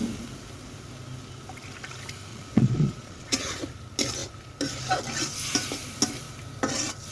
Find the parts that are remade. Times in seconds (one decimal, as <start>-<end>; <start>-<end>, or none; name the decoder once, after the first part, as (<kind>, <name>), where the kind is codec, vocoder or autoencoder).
2.3-3.6 (vocoder, Vocos)